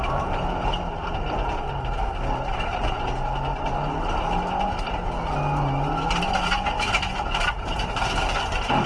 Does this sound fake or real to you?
real